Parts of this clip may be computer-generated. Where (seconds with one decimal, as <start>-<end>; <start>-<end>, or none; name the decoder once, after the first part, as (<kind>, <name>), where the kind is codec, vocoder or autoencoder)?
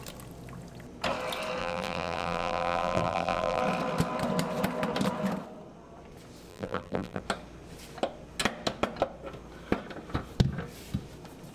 1.6-3.6 (vocoder, BigVGAN v2); 6.5-7.2